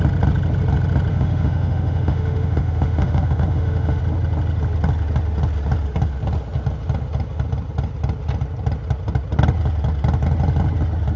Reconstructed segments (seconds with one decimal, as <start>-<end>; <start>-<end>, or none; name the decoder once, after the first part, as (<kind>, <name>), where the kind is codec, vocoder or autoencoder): 1.1-4.0 (autoencoder, DAC-VAE)